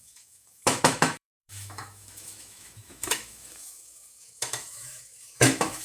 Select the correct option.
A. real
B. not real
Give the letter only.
B